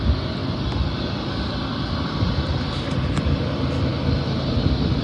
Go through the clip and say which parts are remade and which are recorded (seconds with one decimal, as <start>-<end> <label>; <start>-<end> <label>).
0.0-5.0 recorded